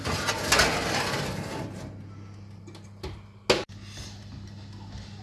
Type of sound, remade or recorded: recorded